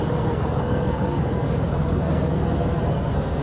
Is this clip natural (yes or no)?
no